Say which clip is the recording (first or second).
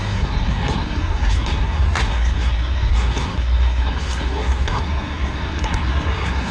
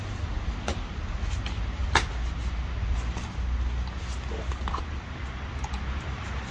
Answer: second